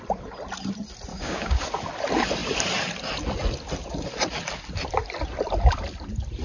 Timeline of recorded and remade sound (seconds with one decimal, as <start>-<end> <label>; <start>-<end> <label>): 0.0-1.1 recorded; 1.1-1.6 remade; 1.6-6.4 recorded